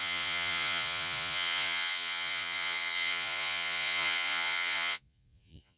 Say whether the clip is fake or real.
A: fake